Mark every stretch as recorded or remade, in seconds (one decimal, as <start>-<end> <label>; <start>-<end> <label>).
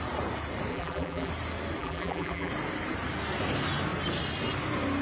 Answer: 0.0-0.7 recorded; 0.7-1.3 remade; 1.3-1.8 recorded; 1.8-2.5 remade; 2.5-5.0 recorded